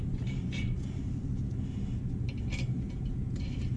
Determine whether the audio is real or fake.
real